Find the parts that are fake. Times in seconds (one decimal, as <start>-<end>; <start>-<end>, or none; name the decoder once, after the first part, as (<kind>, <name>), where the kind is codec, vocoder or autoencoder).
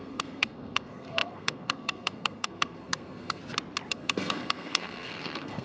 0.0-3.4 (codec, SNAC); 3.9-5.6